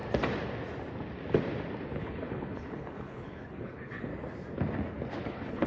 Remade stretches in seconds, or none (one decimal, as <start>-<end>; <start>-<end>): 2.0-4.1; 5.2-5.7